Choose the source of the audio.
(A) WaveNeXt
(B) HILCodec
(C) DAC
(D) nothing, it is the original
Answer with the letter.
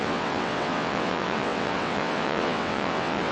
A